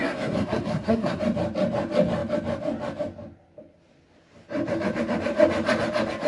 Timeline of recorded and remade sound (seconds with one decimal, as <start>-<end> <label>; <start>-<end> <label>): 0.0-1.2 remade; 1.2-6.3 recorded